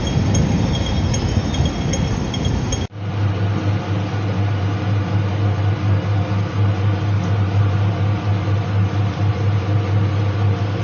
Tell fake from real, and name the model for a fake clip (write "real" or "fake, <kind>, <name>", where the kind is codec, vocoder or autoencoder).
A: real